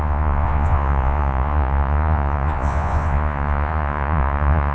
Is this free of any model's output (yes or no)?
no